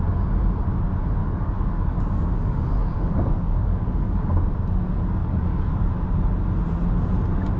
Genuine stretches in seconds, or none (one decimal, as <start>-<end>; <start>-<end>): 0.0-1.2; 4.3-5.2; 5.9-7.6

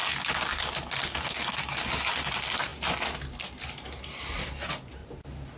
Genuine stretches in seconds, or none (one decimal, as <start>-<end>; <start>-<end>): 0.0-5.6